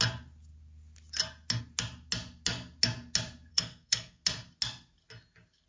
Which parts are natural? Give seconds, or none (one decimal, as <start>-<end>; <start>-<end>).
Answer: 0.0-3.5; 4.2-5.7